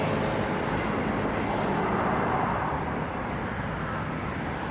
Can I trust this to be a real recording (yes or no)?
yes